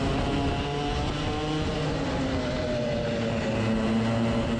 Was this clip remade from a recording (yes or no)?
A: no